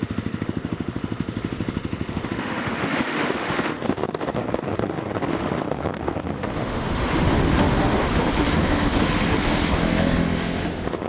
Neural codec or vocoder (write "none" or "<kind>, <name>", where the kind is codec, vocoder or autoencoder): autoencoder, DAC-VAE